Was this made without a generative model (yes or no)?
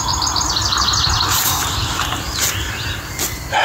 yes